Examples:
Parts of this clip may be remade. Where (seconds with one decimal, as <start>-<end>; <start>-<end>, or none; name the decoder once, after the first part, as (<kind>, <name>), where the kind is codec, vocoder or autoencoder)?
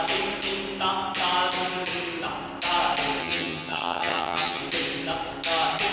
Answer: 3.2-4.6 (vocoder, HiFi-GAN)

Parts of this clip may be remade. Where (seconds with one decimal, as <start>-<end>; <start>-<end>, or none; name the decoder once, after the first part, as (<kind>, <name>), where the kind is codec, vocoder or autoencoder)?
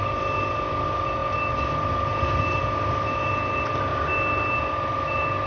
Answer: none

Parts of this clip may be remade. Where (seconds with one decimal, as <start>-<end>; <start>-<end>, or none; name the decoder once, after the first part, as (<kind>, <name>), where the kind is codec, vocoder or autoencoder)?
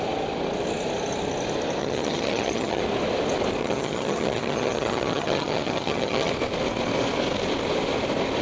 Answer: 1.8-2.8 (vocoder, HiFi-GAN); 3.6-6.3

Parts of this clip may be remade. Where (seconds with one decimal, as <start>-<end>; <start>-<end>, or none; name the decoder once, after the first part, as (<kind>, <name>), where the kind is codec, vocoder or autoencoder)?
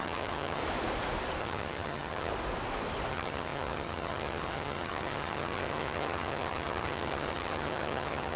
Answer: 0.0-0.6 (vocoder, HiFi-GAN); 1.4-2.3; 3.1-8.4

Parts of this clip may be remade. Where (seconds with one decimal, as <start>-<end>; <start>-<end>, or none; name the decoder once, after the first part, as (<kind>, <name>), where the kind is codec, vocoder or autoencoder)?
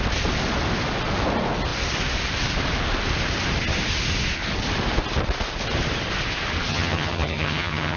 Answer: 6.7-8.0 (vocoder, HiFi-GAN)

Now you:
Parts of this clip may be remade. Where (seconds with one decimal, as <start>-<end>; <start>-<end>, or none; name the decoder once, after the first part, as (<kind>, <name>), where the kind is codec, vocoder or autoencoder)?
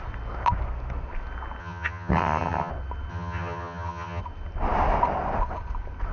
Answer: 1.6-2.7 (vocoder, HiFi-GAN); 3.1-4.2